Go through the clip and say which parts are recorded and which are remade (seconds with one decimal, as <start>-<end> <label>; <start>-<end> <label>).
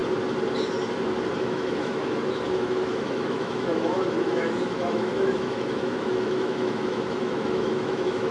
0.0-1.4 recorded; 1.4-8.3 remade